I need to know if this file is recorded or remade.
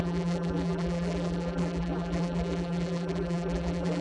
remade